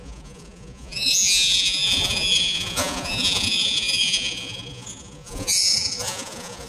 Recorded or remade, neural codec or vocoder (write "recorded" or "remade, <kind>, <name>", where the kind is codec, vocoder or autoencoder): remade, vocoder, Vocos